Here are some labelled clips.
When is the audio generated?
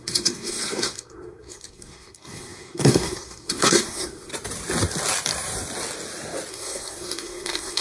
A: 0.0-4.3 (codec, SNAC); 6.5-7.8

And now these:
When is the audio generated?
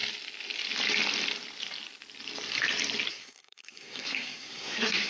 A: 3.1-5.1 (codec, SNAC)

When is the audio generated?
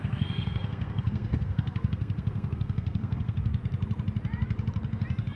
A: 0.0-3.6 (codec, SNAC)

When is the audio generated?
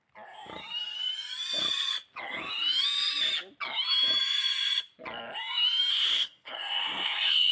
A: 5.9-7.5 (codec, SNAC)